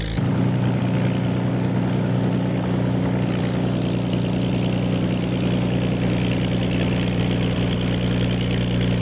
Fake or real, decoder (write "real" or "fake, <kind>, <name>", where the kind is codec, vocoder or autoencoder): real